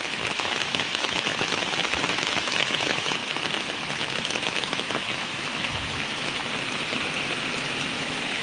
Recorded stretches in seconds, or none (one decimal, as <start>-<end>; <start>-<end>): 6.4-7.7